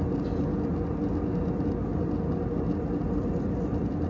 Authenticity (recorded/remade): recorded